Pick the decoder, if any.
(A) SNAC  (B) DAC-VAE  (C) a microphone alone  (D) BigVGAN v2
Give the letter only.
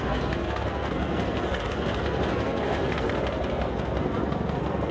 A